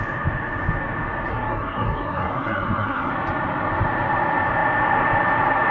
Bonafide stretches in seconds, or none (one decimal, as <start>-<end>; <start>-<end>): 0.0-1.3; 3.1-5.7